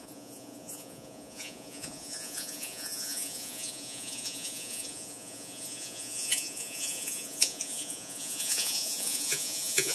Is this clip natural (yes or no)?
no